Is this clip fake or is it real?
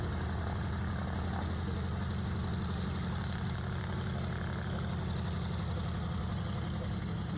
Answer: real